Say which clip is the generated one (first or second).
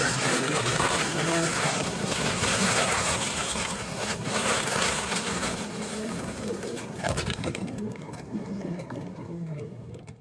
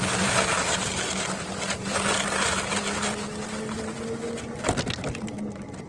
first